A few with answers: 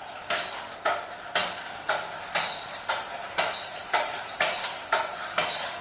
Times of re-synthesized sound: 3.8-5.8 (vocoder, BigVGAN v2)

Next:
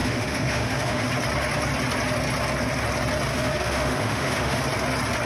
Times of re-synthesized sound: 0.0-1.1 (autoencoder, DAC-VAE); 3.3-4.6